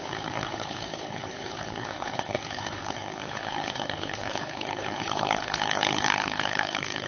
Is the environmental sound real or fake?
fake